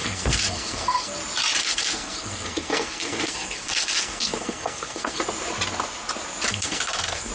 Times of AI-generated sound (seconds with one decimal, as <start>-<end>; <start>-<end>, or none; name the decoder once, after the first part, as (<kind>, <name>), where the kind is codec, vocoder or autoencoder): 0.0-1.1 (codec, SNAC); 1.6-5.2; 6.5-7.3

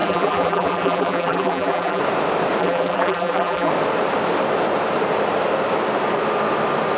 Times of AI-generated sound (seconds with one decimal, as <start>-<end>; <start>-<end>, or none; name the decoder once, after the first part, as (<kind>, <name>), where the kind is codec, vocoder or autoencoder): 0.0-2.0 (vocoder, BigVGAN v2); 2.6-3.7

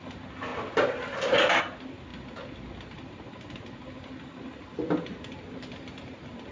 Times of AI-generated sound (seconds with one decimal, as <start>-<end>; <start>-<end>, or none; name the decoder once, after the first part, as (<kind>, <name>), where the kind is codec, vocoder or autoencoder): none